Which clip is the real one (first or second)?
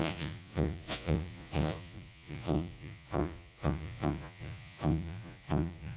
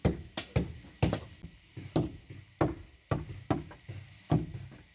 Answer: second